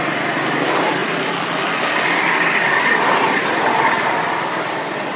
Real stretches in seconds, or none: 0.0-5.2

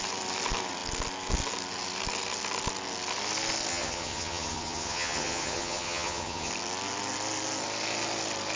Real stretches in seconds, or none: 0.0-3.7; 6.5-8.6

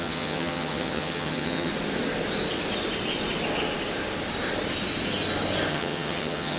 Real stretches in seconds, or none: 1.7-5.7